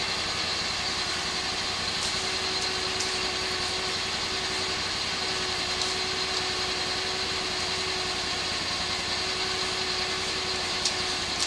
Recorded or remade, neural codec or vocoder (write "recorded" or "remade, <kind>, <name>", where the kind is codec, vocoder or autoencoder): recorded